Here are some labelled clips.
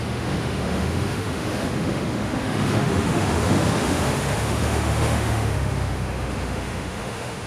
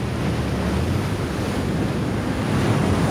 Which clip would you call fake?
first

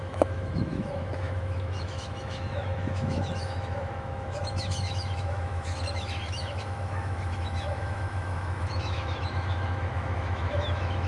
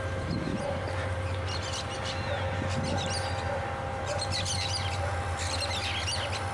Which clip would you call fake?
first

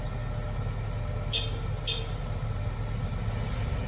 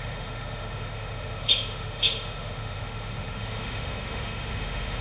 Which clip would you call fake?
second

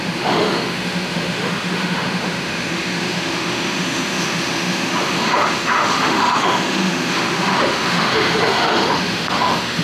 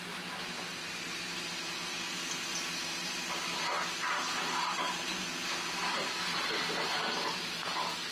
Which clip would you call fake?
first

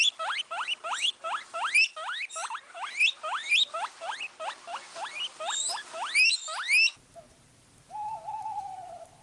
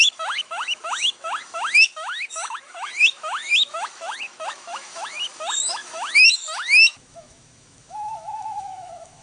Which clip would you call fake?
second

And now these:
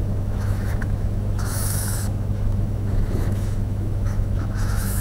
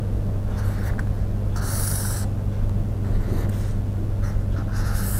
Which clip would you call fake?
first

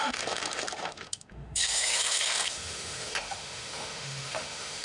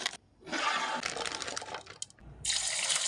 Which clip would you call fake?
first